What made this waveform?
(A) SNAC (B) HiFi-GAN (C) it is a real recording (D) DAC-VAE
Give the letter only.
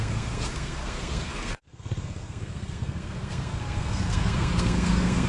A